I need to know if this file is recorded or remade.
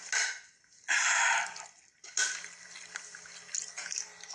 recorded